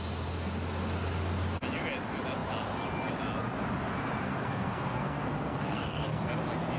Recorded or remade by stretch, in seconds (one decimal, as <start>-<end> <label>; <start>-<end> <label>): 0.0-4.2 recorded; 4.2-6.3 remade; 6.3-6.8 recorded